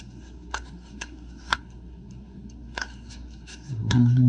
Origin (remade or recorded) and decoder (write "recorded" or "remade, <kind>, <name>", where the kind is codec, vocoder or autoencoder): remade, codec, SNAC